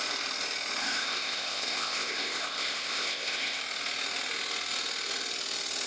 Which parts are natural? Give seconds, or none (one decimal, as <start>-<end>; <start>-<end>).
0.0-0.8; 3.6-5.9

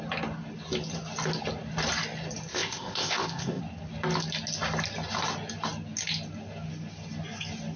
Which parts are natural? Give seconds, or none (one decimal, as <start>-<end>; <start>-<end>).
0.0-2.5; 3.6-7.8

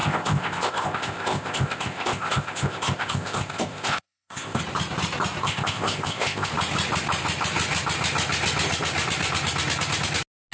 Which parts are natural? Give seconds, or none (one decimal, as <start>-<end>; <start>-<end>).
4.6-5.4; 6.5-10.5

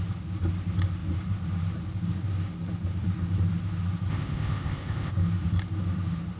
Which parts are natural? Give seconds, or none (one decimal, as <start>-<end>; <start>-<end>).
0.0-4.1; 5.1-6.4

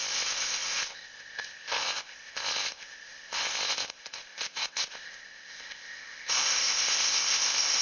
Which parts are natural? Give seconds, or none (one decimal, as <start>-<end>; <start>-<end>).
none

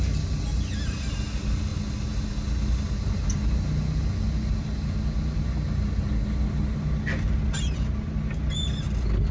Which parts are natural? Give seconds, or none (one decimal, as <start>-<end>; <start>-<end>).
0.0-9.3